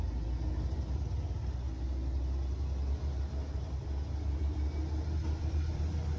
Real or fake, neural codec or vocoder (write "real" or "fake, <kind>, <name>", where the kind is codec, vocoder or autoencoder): real